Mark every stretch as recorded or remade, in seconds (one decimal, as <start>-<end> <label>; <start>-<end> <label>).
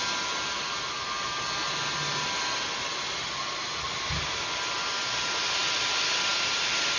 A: 0.0-7.0 recorded